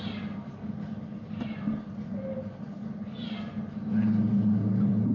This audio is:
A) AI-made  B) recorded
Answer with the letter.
B